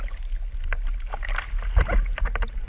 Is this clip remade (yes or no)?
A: no